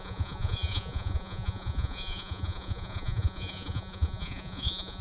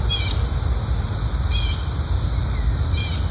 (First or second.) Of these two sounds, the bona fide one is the second